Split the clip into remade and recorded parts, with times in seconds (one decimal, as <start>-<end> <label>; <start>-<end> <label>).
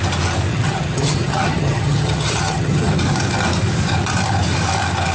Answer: 0.0-0.5 recorded; 0.5-2.9 remade; 2.9-5.1 recorded